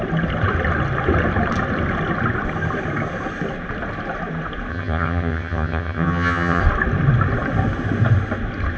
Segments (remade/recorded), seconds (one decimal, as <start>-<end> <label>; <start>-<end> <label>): 0.0-4.7 recorded; 4.7-6.6 remade; 6.6-8.8 recorded

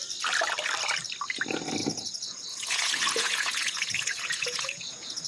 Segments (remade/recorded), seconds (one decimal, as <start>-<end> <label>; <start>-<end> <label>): 0.0-1.8 recorded; 1.8-5.3 remade

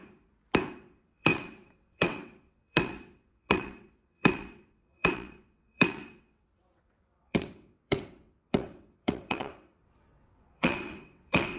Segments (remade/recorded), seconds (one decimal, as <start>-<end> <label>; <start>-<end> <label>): 0.0-0.7 recorded; 0.7-11.6 remade

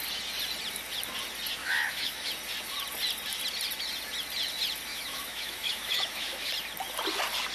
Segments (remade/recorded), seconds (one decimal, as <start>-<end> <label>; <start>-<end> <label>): 0.0-1.6 recorded; 1.6-2.3 remade; 2.3-4.9 recorded; 4.9-6.5 remade; 6.5-7.5 recorded

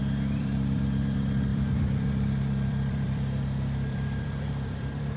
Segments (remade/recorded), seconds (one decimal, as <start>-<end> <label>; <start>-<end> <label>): 0.0-5.2 remade

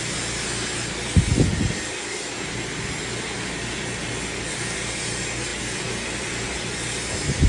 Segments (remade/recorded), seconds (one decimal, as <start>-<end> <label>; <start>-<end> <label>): 0.0-7.5 recorded

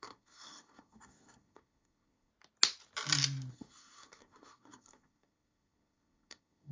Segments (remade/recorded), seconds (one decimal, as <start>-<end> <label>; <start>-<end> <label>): 0.0-2.3 remade; 2.3-3.5 recorded; 3.5-6.7 remade